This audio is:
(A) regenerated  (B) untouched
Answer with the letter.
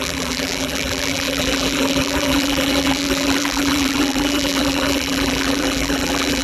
A